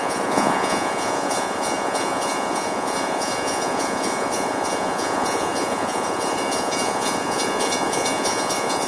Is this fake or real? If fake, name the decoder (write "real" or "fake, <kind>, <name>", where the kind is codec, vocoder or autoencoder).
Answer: fake, vocoder, Vocos